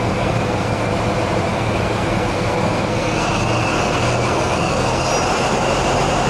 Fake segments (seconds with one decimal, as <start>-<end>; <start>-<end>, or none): 0.0-0.9; 1.5-5.1